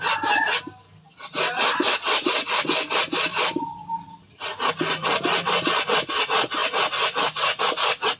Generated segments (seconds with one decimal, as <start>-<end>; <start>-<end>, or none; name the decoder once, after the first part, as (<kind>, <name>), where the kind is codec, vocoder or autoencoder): 3.3-4.7 (vocoder, BigVGAN v2)